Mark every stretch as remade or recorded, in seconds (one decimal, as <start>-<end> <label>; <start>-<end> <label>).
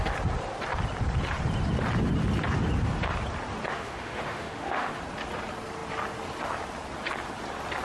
0.0-3.7 recorded; 3.7-5.0 remade; 5.0-7.8 recorded